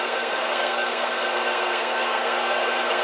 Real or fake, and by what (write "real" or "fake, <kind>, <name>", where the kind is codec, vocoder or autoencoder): fake, codec, SNAC